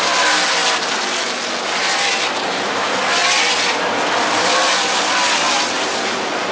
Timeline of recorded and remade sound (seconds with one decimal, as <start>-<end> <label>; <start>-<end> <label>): 0.0-6.5 recorded